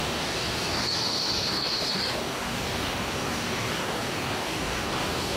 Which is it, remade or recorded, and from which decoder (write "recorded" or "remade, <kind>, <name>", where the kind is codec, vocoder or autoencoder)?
remade, codec, DAC